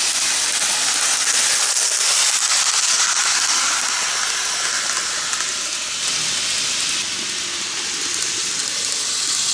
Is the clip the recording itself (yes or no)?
yes